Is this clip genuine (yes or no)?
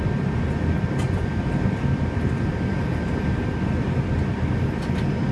yes